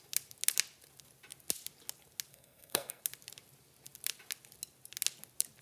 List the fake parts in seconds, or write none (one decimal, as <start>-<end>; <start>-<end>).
2.3-3.0